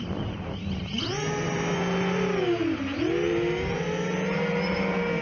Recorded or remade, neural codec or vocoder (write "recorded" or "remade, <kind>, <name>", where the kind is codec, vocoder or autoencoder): recorded